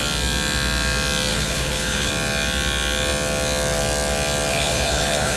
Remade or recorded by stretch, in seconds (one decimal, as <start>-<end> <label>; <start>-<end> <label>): 0.0-1.3 recorded; 1.3-2.1 remade; 2.1-4.5 recorded; 4.5-5.4 remade